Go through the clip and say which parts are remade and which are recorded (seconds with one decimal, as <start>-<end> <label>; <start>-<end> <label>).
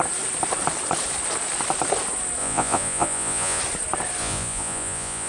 0.0-2.4 recorded; 2.4-3.6 remade; 3.6-4.2 recorded; 4.2-5.3 remade